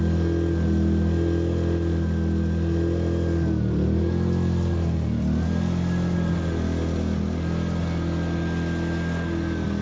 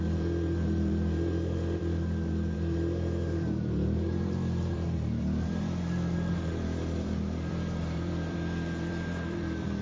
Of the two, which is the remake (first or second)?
second